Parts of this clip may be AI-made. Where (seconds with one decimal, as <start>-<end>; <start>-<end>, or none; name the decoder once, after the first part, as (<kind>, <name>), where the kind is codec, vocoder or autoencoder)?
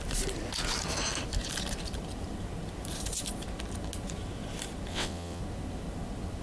4.9-5.4 (vocoder, WaveNeXt)